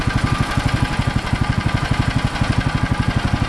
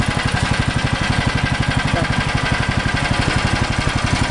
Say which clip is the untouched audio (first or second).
second